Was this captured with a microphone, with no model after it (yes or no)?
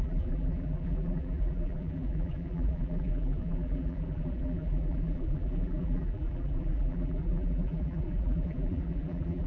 no